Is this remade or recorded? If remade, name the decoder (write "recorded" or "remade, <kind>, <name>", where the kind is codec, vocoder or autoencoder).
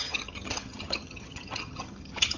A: remade, vocoder, HiFi-GAN